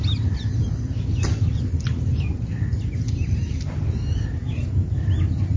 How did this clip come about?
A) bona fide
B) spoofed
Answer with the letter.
A